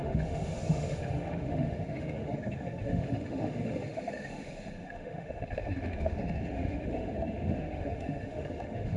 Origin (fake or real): fake